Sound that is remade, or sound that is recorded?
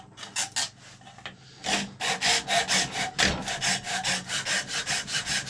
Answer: recorded